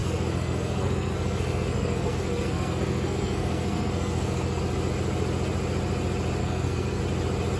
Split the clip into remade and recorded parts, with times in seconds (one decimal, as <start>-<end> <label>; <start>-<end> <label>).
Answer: 0.0-4.6 remade; 4.6-6.4 recorded; 6.4-7.0 remade; 7.0-7.6 recorded